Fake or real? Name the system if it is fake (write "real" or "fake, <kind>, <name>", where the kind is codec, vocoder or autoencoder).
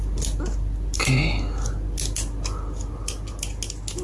real